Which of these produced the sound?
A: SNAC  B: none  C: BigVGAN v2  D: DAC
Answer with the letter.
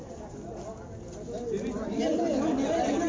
B